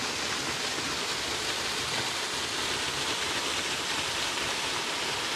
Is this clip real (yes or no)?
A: yes